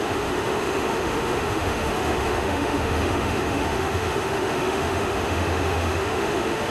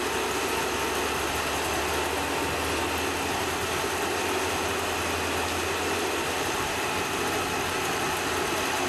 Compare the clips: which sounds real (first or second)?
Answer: second